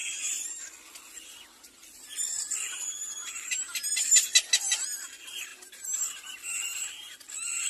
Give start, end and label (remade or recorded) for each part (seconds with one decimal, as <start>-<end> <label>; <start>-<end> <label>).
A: 0.0-7.7 recorded